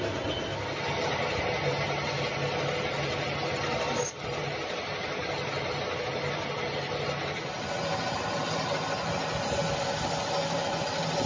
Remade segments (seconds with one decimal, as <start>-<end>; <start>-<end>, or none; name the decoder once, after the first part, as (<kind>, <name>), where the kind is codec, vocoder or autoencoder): none